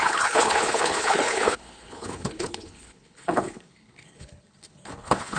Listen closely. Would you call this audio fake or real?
fake